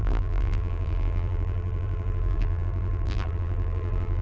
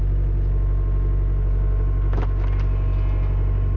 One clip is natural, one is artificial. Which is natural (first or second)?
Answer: second